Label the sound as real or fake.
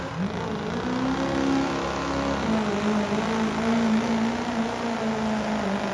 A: real